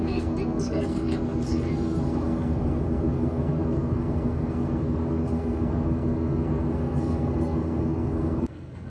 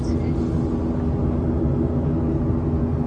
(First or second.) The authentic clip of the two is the second